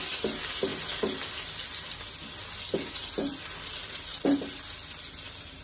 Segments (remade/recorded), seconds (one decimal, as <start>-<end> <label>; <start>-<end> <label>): 0.0-5.6 recorded